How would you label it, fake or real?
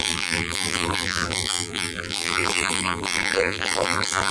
fake